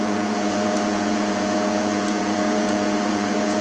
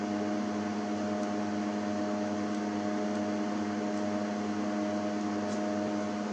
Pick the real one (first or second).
second